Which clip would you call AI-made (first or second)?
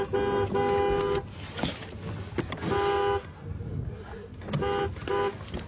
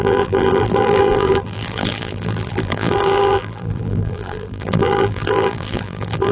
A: second